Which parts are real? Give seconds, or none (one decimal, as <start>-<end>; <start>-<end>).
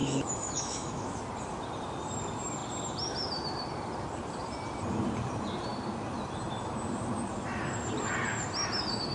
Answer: 1.2-9.1